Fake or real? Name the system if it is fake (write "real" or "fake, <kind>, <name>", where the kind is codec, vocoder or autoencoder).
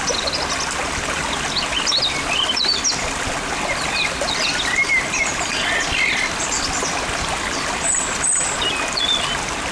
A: real